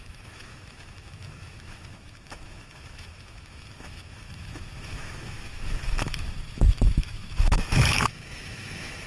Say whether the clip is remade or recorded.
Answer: remade